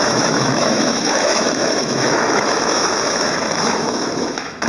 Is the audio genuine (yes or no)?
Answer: no